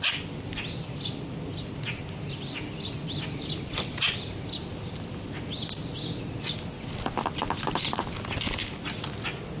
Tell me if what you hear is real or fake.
real